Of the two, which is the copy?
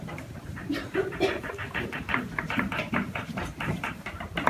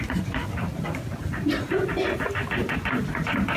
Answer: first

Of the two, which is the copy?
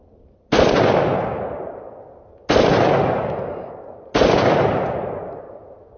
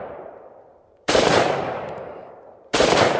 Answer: second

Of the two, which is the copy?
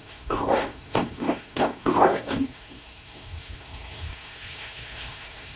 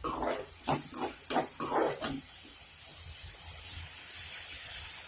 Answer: first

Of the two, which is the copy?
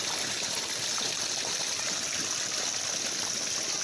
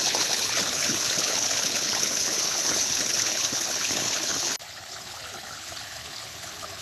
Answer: second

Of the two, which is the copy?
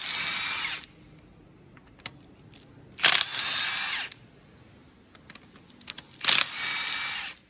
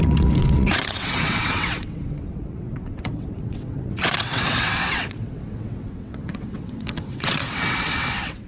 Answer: second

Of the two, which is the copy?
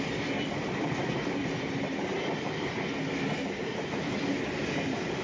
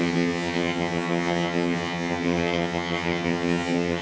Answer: second